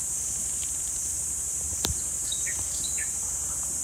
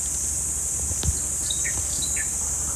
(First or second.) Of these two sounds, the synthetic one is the first